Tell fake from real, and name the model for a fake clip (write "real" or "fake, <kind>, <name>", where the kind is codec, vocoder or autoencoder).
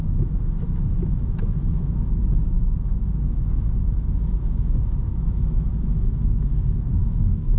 fake, autoencoder, DAC-VAE